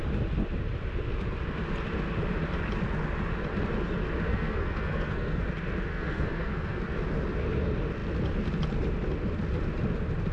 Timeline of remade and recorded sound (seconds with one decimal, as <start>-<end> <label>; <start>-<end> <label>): 0.0-4.3 recorded; 4.3-5.4 remade; 5.4-5.9 recorded; 5.9-6.8 remade; 6.8-10.3 recorded